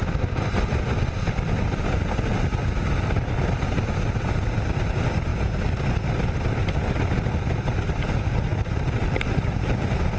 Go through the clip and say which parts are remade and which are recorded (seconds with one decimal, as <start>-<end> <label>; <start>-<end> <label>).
0.0-5.3 remade; 5.3-7.6 recorded; 7.6-10.2 remade